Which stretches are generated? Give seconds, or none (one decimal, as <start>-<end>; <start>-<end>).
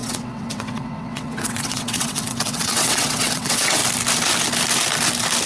0.0-3.8